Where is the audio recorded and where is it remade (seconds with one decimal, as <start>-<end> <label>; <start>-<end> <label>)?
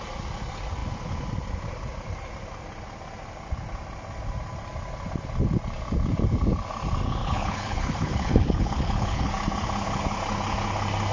0.0-7.2 recorded; 7.2-9.3 remade; 9.3-11.1 recorded